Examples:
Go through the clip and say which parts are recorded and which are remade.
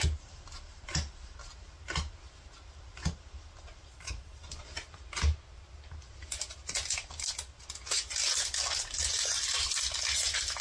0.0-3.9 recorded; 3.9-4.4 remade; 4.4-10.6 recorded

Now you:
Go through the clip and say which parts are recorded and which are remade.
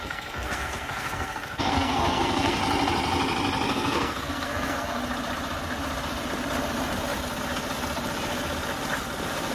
0.0-2.6 remade; 2.6-3.7 recorded; 3.7-5.0 remade; 5.0-9.5 recorded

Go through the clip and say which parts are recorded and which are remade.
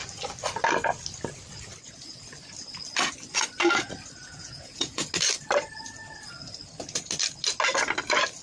0.0-4.2 recorded; 4.2-5.1 remade; 5.1-8.4 recorded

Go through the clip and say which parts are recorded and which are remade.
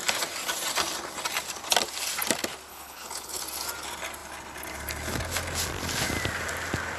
0.0-2.7 recorded; 2.7-3.4 remade; 3.4-7.0 recorded